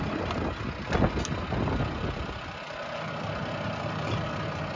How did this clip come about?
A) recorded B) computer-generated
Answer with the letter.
A